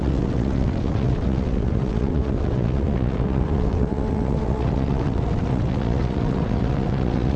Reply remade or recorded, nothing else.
remade